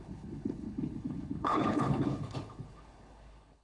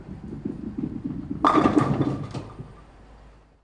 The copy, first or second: first